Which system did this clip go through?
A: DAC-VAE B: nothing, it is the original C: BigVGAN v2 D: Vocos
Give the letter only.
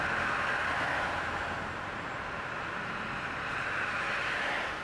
B